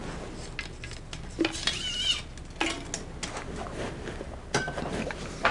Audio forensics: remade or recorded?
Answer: recorded